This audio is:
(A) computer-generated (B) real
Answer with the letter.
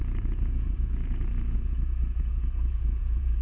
A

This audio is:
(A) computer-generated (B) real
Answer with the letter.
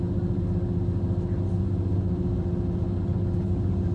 B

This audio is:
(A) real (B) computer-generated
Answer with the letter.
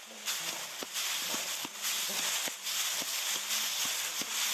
A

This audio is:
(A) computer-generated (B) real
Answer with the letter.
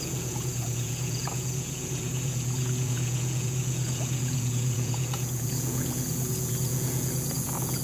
A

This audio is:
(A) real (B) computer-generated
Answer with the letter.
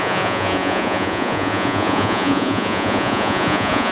B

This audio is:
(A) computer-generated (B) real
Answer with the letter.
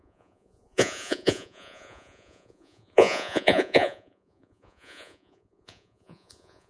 A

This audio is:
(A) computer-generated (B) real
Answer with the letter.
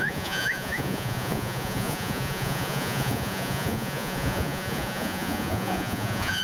A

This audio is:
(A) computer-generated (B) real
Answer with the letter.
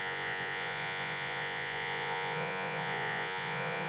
A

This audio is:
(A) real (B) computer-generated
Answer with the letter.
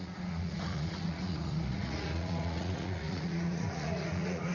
B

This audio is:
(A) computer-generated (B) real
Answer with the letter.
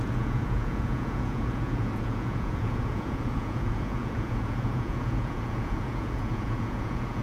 A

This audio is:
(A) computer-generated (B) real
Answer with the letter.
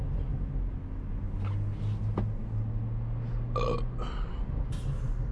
B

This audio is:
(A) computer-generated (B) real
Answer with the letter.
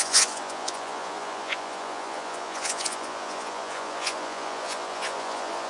A